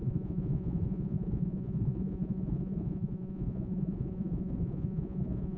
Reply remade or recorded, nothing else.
remade